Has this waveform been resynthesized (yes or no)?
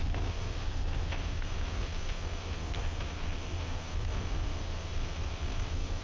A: yes